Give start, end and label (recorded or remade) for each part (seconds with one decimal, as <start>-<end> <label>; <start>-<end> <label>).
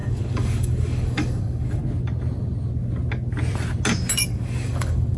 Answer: 0.0-1.8 remade; 1.8-4.2 recorded; 4.2-5.2 remade